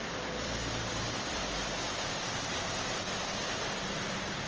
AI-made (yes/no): yes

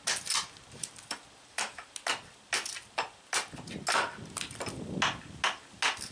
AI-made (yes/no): no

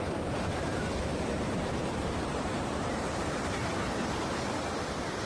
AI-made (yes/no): yes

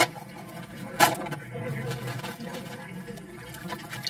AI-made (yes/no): no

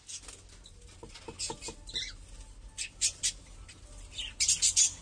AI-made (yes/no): no